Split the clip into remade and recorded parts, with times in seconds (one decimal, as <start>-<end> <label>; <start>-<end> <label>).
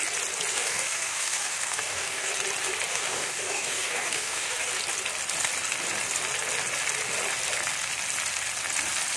0.0-0.5 recorded; 0.5-2.3 remade; 2.3-2.9 recorded; 2.9-4.7 remade; 4.7-9.2 recorded